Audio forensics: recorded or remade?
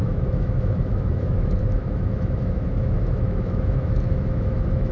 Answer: remade